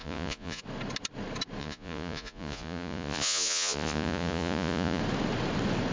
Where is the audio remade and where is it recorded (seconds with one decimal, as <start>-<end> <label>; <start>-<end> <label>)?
0.0-0.6 remade; 0.6-1.6 recorded; 1.6-5.0 remade; 5.0-5.9 recorded

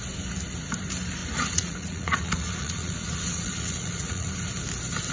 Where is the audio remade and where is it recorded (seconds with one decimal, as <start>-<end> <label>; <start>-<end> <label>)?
0.0-1.2 recorded; 1.2-4.3 remade; 4.3-5.1 recorded

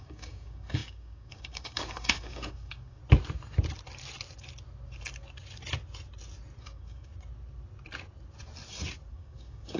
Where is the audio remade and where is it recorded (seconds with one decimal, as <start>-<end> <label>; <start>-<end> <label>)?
0.0-3.0 remade; 3.0-6.6 recorded; 6.6-7.1 remade; 7.1-9.1 recorded; 9.1-9.8 remade